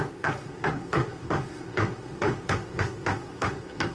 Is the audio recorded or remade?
remade